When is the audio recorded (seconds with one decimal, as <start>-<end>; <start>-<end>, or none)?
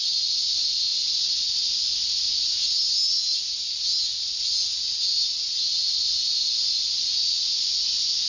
0.0-8.3